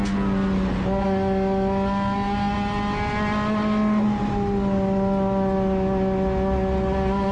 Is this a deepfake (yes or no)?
no